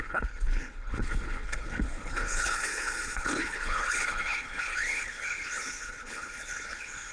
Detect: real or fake fake